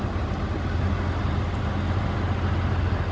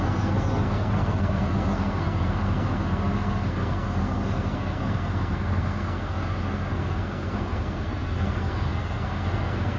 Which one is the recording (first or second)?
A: first